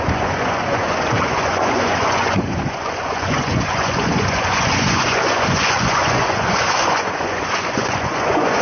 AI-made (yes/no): yes